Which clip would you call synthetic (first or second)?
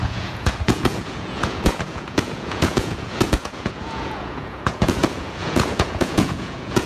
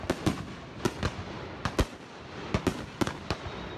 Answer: first